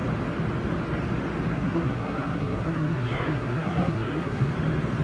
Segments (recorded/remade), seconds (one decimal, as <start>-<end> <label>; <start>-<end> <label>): 0.0-1.5 recorded; 1.5-4.5 remade; 4.5-5.0 recorded